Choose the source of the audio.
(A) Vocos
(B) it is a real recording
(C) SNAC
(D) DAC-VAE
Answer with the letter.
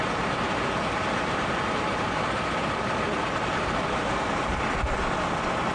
B